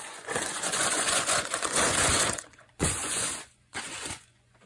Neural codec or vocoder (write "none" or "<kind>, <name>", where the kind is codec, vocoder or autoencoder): vocoder, Vocos